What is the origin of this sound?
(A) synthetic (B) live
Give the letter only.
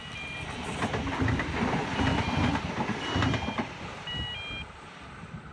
B